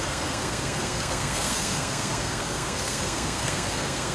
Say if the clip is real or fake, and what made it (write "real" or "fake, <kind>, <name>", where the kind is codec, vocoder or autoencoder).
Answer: fake, codec, SNAC